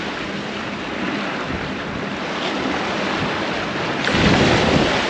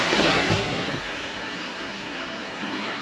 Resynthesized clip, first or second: second